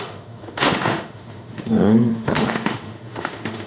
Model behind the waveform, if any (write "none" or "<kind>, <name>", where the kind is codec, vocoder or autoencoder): autoencoder, DAC-VAE